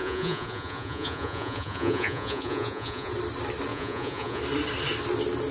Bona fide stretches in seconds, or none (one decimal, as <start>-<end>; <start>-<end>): 3.1-3.7; 4.4-5.5